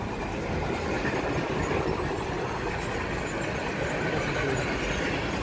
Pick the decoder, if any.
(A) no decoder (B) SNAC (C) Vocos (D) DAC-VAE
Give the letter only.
A